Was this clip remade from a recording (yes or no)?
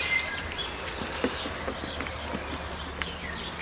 no